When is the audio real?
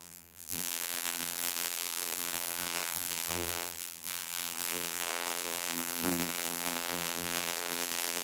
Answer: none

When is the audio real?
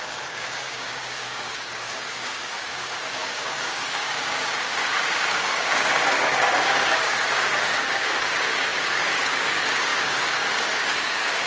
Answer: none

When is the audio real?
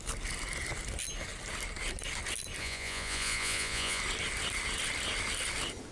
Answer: 0.0-2.6; 4.0-5.9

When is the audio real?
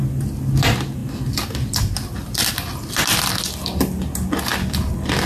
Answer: 0.0-1.0; 2.5-4.5